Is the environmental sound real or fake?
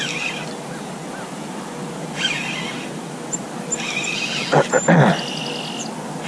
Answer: real